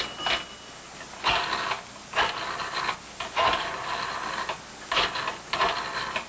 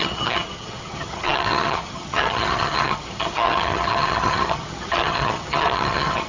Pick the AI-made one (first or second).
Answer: second